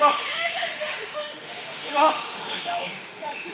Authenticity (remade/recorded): remade